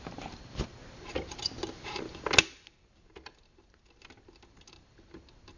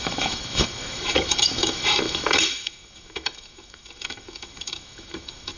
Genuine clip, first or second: first